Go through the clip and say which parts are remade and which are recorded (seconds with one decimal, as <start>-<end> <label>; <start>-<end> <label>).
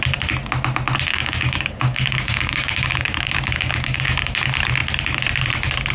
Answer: 0.0-1.1 recorded; 1.1-4.2 remade; 4.2-5.9 recorded